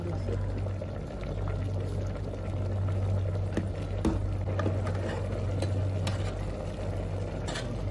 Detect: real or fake real